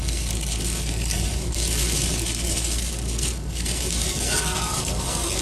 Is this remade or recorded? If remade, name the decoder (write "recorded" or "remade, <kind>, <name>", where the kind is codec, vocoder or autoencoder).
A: remade, codec, SNAC